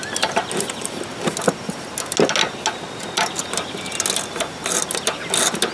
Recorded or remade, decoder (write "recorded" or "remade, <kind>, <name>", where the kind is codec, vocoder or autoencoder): recorded